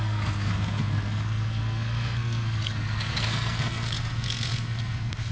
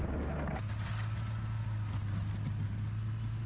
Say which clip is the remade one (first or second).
first